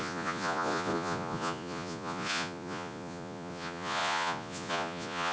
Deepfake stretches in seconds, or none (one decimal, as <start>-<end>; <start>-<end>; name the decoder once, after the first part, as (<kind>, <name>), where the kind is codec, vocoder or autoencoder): 0.0-5.3 (vocoder, Vocos)